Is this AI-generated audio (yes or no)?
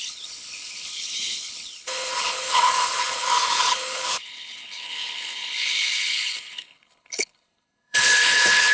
yes